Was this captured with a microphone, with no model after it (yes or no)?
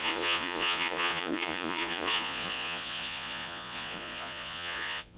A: no